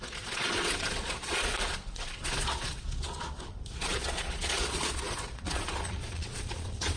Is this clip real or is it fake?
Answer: fake